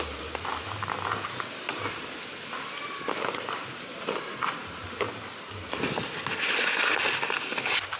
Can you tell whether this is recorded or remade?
recorded